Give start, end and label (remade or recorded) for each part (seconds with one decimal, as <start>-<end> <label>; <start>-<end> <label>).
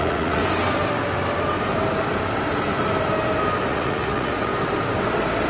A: 0.0-0.4 remade; 0.4-3.6 recorded; 3.6-4.5 remade; 4.5-5.5 recorded